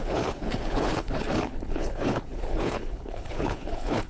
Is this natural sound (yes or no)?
no